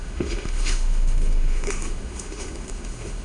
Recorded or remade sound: remade